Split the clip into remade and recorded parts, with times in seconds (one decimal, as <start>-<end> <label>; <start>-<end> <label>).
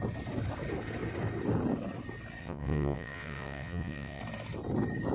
0.0-2.4 recorded; 2.4-4.2 remade; 4.2-5.1 recorded